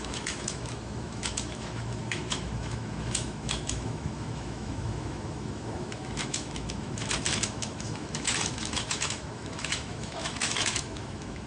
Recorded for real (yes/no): no